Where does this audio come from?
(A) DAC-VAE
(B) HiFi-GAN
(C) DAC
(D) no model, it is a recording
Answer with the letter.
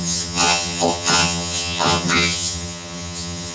B